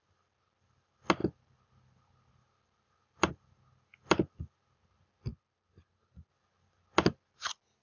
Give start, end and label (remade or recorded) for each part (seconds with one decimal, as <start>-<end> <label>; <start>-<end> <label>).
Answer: 0.0-7.8 recorded